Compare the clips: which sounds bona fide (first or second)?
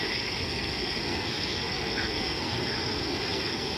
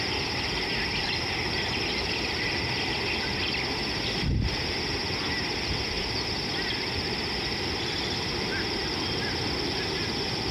second